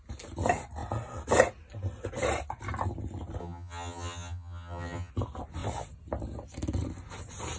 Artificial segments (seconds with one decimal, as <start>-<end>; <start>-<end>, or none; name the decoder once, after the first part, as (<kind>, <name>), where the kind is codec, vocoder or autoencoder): 3.4-5.1 (vocoder, HiFi-GAN)